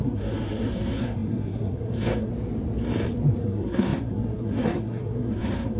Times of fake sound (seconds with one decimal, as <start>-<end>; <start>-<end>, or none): 0.0-2.3; 3.4-5.8